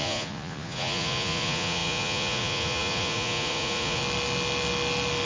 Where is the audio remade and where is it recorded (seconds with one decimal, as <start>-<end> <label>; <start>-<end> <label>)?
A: 0.0-4.0 remade; 4.0-5.3 recorded